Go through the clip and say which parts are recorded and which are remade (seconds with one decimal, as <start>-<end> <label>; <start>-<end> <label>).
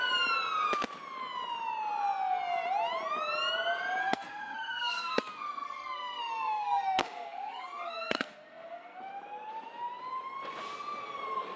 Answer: 0.0-4.0 recorded; 4.0-9.0 remade; 9.0-11.6 recorded